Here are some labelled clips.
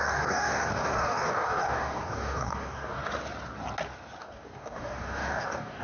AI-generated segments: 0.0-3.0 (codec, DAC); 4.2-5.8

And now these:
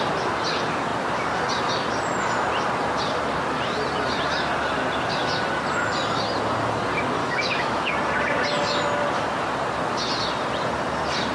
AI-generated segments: 7.2-7.9 (autoencoder, DAC-VAE)

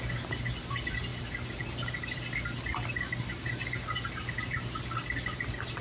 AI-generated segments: none

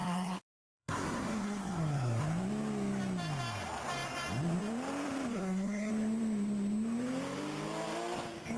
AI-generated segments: 0.0-2.2 (codec, SNAC); 5.3-5.9

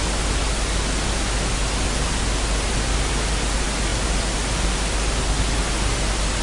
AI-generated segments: none